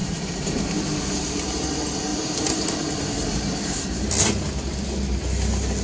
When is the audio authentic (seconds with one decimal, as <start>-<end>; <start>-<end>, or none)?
0.8-2.1; 4.1-5.8